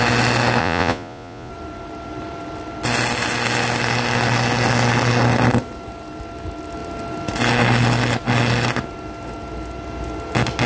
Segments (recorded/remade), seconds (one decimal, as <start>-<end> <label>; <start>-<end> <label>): 0.0-0.6 recorded; 0.6-1.5 remade; 1.5-10.7 recorded

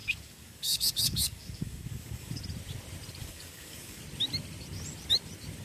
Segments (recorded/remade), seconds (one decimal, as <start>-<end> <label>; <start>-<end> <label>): 0.0-2.4 remade; 2.4-3.2 recorded; 3.2-4.0 remade; 4.0-5.6 recorded

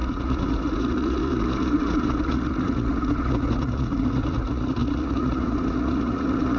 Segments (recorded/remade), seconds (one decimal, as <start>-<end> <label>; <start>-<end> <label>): 0.0-6.6 remade

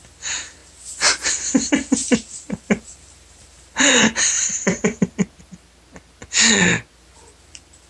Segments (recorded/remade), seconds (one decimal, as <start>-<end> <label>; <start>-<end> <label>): 0.0-2.0 recorded; 2.0-5.5 remade; 5.5-7.9 recorded

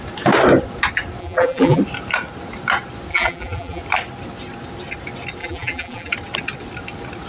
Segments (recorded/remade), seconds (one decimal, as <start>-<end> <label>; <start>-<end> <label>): 0.0-1.2 recorded; 1.2-1.8 remade; 1.8-3.1 recorded; 3.1-3.8 remade; 3.8-5.4 recorded; 5.4-6.1 remade; 6.1-7.3 recorded

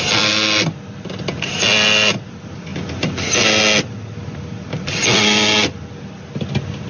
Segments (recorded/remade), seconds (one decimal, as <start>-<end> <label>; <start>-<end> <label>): 0.0-2.7 recorded; 2.7-3.6 remade; 3.6-6.9 recorded

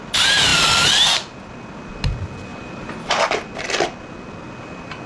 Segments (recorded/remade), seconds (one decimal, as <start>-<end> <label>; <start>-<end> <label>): 0.0-2.5 recorded; 2.5-3.2 remade; 3.2-5.1 recorded

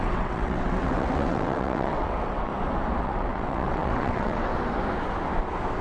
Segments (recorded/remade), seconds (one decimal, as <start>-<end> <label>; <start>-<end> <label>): 0.0-2.5 remade; 2.5-3.0 recorded; 3.0-4.5 remade; 4.5-5.8 recorded